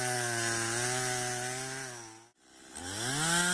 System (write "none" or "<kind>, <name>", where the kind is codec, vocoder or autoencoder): none